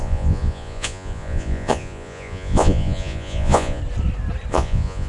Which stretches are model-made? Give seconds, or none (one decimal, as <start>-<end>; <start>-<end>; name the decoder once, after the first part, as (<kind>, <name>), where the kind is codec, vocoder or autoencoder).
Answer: 0.0-3.8 (vocoder, Vocos); 4.5-5.1